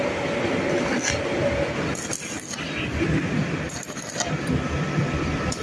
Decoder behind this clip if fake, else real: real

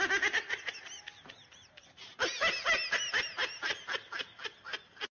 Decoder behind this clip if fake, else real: real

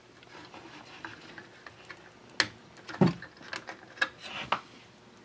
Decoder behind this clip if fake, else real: real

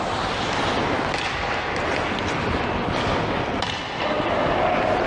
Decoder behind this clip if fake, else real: real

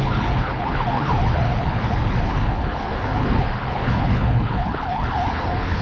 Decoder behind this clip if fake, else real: fake, codec, HILCodec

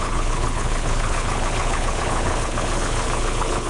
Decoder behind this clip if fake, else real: fake, codec, HILCodec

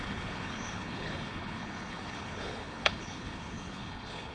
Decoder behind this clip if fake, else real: fake, codec, HILCodec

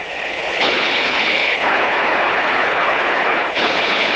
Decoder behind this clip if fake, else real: fake, codec, HILCodec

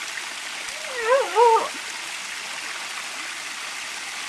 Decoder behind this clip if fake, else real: real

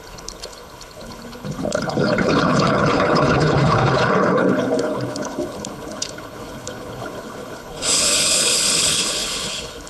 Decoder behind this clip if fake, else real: fake, codec, HILCodec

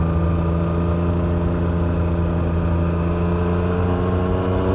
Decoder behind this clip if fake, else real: real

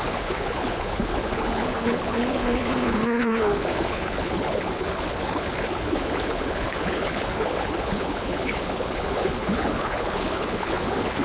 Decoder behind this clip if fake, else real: fake, codec, HILCodec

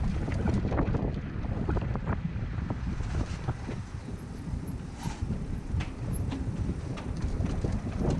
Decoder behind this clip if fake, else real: real